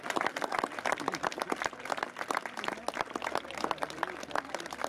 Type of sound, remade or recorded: recorded